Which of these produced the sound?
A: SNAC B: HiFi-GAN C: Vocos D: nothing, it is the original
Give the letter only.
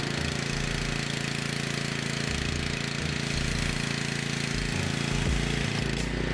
D